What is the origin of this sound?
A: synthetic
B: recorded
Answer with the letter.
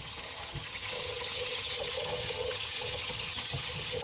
A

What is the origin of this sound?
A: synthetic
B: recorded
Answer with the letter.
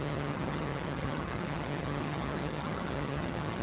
A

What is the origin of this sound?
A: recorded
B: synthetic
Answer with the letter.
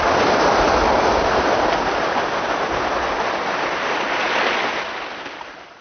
A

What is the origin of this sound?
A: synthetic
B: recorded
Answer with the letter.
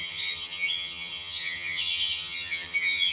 A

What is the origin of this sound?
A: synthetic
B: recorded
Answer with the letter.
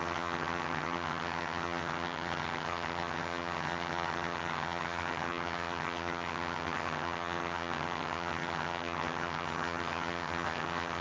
A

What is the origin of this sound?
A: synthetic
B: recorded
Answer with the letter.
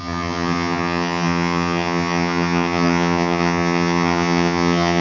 A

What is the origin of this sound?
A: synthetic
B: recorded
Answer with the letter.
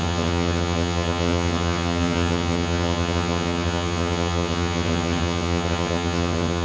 A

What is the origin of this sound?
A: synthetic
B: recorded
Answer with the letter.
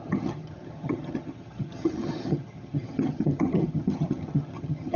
A